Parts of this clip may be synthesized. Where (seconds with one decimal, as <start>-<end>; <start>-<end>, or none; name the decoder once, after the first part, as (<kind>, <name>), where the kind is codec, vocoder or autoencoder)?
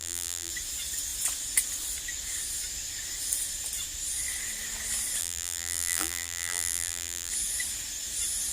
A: 0.0-0.5 (vocoder, BigVGAN v2); 5.2-7.3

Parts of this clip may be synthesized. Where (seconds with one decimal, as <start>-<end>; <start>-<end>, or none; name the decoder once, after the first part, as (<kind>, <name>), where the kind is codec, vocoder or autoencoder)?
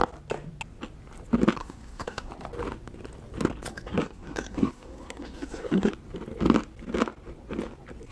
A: 1.6-2.3 (codec, SNAC); 3.7-5.9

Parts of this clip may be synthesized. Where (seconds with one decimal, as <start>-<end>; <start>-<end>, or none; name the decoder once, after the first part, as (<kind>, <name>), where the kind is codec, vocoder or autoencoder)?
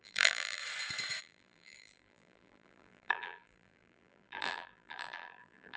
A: 0.0-0.6 (vocoder, BigVGAN v2); 1.2-5.8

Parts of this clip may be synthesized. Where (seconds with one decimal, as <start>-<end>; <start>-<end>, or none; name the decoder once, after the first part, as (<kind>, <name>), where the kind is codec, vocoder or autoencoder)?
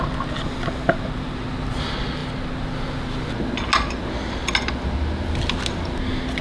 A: none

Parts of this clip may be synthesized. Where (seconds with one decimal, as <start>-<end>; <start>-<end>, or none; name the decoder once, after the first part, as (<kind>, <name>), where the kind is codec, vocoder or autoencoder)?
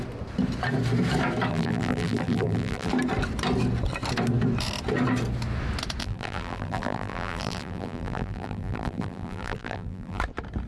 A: 1.5-2.9 (vocoder, BigVGAN v2); 6.0-10.2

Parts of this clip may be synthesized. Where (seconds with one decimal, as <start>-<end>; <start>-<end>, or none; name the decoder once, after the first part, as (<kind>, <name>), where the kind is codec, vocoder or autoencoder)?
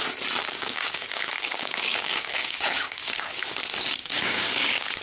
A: 0.4-3.4 (codec, DAC); 4.0-5.0